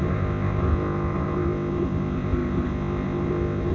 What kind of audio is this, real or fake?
fake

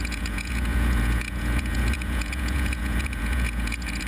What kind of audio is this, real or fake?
fake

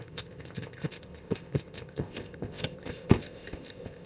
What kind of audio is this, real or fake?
fake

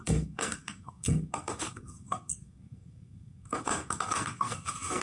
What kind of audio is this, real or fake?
fake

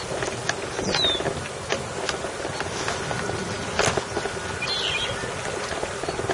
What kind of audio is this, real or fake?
real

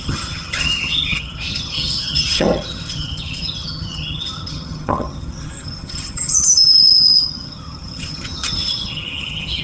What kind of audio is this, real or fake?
fake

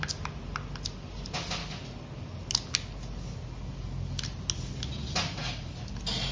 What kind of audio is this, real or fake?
real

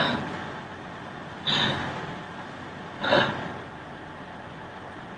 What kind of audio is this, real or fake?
real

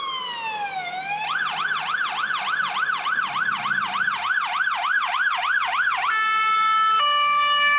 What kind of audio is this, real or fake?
real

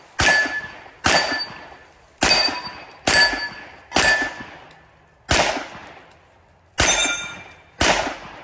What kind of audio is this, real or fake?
real